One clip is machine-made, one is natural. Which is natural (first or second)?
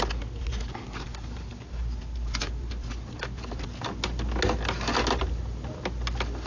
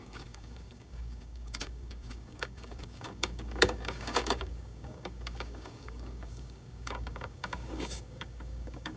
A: first